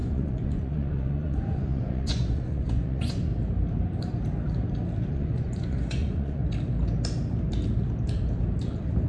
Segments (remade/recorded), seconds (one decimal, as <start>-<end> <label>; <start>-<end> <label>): 0.0-3.3 remade; 3.3-5.1 recorded; 5.1-6.4 remade; 6.4-9.1 recorded

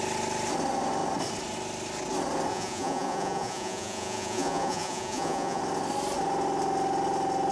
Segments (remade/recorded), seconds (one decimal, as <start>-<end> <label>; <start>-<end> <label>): 0.0-2.5 recorded; 2.5-5.6 remade; 5.6-7.5 recorded